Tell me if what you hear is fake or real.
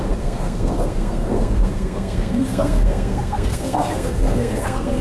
fake